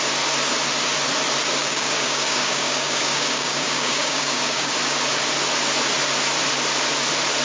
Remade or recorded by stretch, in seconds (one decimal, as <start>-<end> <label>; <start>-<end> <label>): 0.0-1.6 recorded; 1.6-4.7 remade; 4.7-7.4 recorded